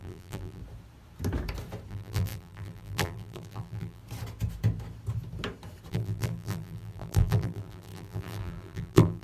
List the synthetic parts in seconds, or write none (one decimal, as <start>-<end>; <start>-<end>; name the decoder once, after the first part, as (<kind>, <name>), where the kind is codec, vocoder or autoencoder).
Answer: 0.0-0.6 (vocoder, BigVGAN v2); 1.9-4.0; 5.9-9.2